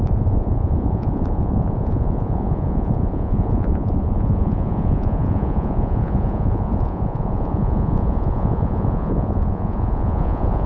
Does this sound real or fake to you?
fake